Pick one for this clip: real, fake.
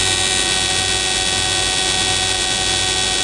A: real